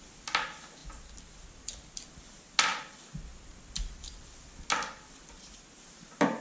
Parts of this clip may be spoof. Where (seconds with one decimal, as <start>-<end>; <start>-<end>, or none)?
none